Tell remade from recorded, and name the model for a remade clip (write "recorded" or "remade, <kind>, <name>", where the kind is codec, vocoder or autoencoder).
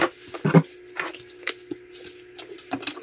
recorded